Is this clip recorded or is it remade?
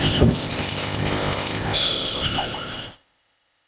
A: remade